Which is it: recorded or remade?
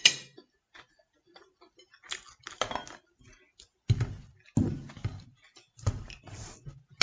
recorded